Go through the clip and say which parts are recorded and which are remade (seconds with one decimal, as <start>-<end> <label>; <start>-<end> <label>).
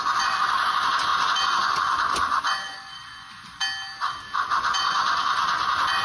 0.0-3.6 remade; 3.6-4.6 recorded; 4.6-6.0 remade